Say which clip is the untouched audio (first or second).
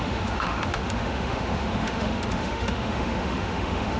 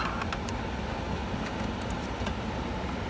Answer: second